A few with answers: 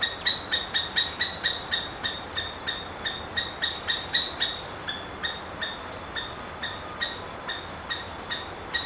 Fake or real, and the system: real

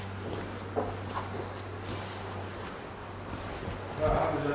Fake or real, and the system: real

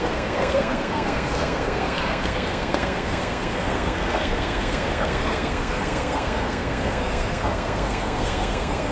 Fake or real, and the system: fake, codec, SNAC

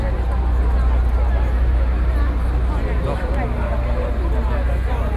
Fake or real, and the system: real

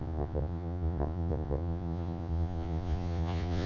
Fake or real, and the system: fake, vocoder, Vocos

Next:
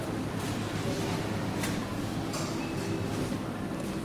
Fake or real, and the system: real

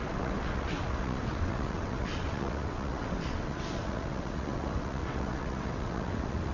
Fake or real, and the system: fake, vocoder, WaveNeXt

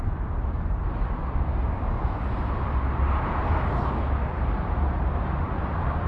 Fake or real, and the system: real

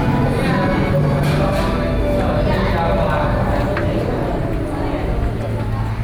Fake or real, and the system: real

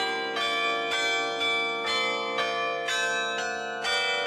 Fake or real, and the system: real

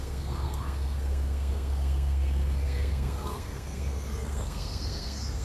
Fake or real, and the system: fake, codec, SNAC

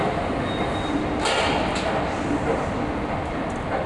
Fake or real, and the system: real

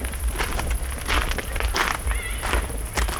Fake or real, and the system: real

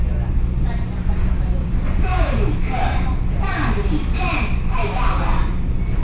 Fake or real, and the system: fake, vocoder, BigVGAN v2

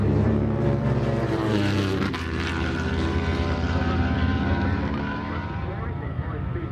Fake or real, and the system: fake, vocoder, BigVGAN v2